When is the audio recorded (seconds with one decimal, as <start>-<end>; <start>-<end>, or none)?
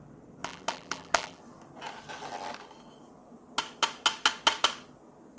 0.0-0.4; 1.4-5.4